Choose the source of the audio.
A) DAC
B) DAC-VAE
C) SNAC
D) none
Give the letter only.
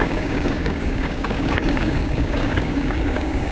A